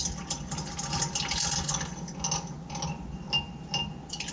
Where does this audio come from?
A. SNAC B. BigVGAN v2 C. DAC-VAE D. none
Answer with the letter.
D